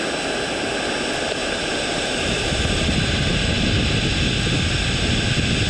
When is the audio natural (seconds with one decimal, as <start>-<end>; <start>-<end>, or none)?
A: 0.0-1.4; 4.8-5.7